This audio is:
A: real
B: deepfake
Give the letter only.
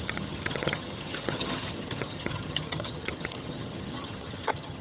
B